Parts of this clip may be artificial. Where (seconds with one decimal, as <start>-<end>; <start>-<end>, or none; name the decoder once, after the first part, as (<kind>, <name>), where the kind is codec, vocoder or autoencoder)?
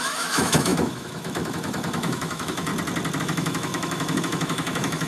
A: 0.0-2.7 (autoencoder, DAC-VAE); 3.2-5.1